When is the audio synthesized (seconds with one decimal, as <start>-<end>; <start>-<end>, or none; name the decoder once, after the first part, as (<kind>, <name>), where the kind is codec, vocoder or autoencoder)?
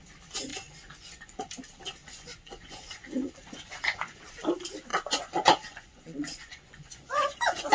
0.5-1.5 (vocoder, Vocos); 2.0-4.3; 4.9-7.7